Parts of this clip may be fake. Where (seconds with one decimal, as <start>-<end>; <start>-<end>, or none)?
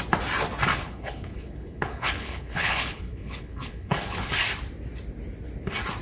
0.7-4.3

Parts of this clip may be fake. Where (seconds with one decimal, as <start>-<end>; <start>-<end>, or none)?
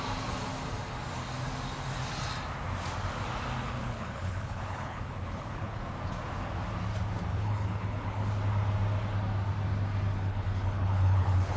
3.8-5.8; 7.3-8.3; 10.3-11.6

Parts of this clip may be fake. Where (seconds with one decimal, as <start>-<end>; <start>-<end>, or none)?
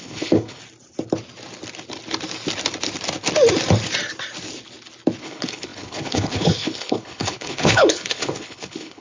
0.0-0.6; 5.2-9.0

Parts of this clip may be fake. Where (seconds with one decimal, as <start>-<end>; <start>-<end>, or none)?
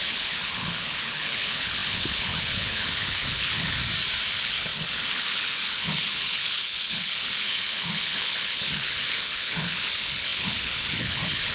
0.0-3.8; 4.3-11.5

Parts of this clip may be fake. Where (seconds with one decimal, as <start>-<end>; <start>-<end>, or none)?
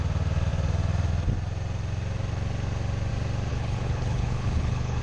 3.5-5.0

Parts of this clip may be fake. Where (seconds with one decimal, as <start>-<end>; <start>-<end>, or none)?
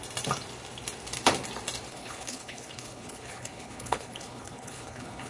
1.9-5.3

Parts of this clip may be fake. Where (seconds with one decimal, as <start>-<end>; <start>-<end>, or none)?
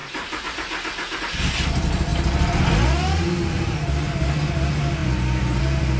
none